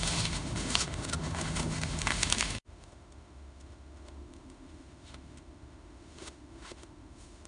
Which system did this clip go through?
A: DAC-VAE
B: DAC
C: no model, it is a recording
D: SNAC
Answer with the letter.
A